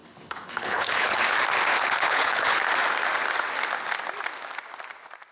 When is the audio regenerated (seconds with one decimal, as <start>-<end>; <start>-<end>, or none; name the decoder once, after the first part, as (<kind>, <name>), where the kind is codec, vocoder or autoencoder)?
0.0-1.2 (codec, HILCodec); 1.7-2.6